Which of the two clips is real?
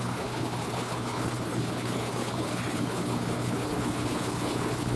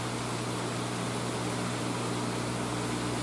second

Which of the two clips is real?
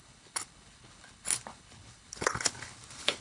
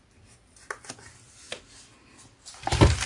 second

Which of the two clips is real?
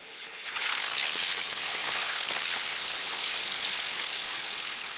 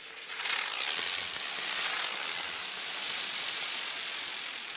second